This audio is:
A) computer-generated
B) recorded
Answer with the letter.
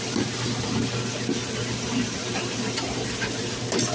B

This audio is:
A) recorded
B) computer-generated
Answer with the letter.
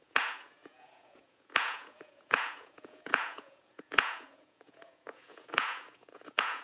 B